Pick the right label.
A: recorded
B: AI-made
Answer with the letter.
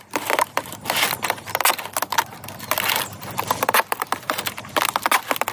A